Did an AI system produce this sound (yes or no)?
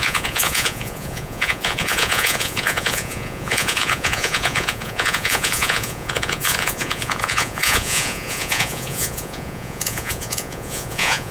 yes